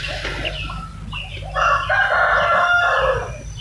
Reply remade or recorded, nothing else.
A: recorded